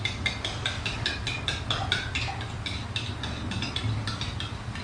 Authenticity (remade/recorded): recorded